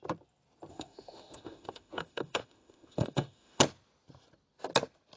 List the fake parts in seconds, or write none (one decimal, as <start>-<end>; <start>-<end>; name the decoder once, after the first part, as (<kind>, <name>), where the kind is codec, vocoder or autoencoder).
0.7-3.6 (autoencoder, DAC-VAE)